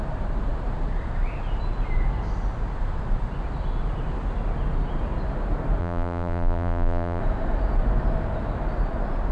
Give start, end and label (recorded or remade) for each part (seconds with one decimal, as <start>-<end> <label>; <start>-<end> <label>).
0.0-5.8 recorded; 5.8-7.2 remade; 7.2-9.3 recorded